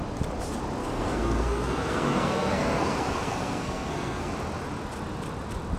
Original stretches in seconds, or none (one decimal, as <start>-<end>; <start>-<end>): 0.0-0.8; 4.3-5.8